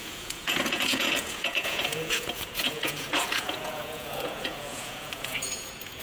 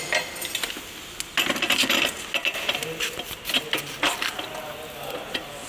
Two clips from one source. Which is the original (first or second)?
second